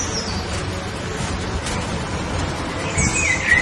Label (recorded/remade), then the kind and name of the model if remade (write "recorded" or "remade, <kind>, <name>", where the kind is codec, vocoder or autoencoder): remade, vocoder, BigVGAN v2